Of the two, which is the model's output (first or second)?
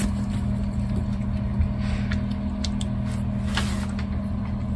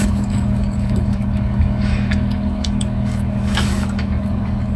second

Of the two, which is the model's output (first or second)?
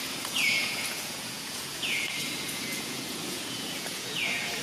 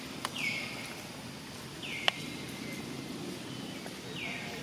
first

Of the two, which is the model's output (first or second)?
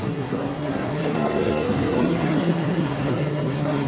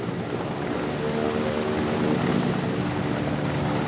first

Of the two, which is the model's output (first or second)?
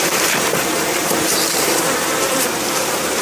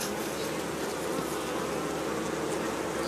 first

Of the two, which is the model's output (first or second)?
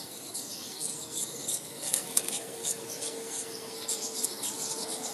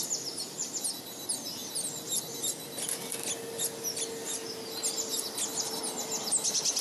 first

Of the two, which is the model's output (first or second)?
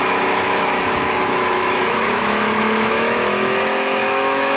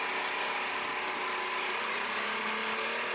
first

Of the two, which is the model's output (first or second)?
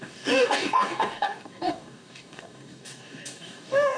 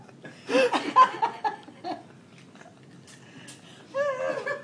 first